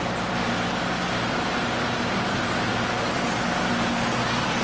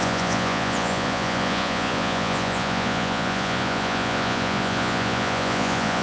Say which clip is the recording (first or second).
first